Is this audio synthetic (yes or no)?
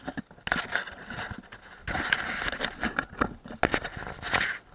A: no